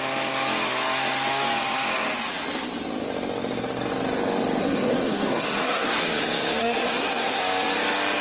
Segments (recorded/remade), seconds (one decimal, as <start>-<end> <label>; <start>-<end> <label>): 0.0-4.6 recorded; 4.6-6.0 remade; 6.0-6.6 recorded; 6.6-7.4 remade; 7.4-8.2 recorded